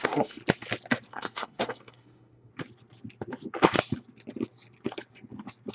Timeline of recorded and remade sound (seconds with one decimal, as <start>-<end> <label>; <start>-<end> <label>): 0.0-0.4 remade; 0.4-1.1 recorded; 1.1-2.5 remade; 2.5-5.7 recorded